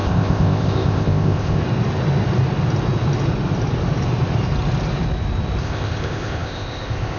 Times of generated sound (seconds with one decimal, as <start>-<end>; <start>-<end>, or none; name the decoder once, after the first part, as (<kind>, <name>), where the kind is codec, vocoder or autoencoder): 0.0-1.6 (codec, ZipCodec); 5.6-7.2